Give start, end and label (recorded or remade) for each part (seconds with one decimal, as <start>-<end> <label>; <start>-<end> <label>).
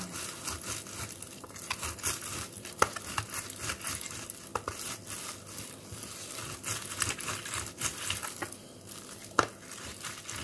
0.0-10.4 recorded